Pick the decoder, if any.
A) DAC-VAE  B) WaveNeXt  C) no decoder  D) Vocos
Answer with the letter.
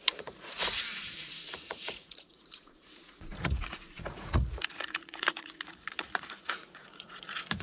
D